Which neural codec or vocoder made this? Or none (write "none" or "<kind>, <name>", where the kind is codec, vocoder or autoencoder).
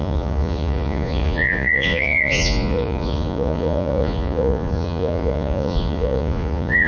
vocoder, Vocos